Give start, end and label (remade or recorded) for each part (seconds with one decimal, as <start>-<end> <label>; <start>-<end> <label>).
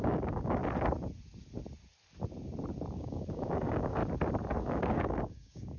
0.0-0.6 remade; 0.6-2.9 recorded; 2.9-4.0 remade; 4.0-4.6 recorded; 4.6-5.8 remade